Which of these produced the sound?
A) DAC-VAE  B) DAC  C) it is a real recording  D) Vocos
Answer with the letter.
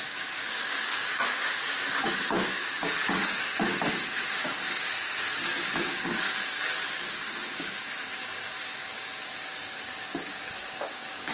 B